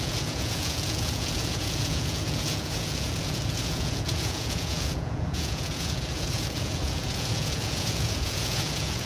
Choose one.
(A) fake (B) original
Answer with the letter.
A